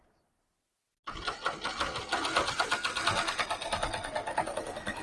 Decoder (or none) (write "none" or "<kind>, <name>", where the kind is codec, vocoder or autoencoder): none